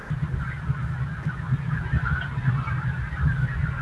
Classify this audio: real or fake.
real